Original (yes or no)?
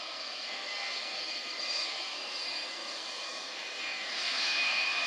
no